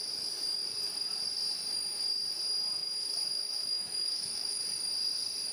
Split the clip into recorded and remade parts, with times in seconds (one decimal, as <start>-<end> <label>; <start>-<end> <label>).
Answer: 0.0-2.8 recorded; 2.8-4.6 remade; 4.6-5.5 recorded